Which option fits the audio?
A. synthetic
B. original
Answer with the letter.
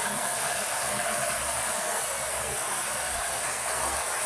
A